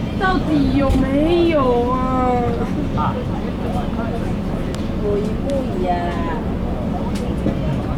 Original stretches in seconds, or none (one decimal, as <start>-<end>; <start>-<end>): 1.0-3.0; 3.6-8.0